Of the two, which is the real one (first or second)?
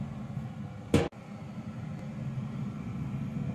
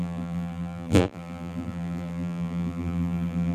first